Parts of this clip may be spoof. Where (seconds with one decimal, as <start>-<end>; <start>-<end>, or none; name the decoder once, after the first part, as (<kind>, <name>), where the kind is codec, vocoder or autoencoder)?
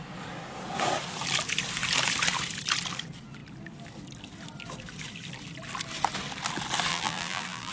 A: 6.9-7.7 (vocoder, BigVGAN v2)